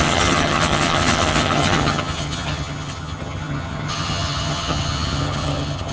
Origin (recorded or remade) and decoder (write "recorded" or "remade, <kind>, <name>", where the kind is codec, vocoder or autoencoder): remade, vocoder, HiFi-GAN